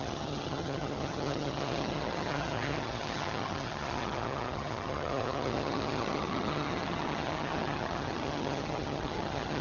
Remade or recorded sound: remade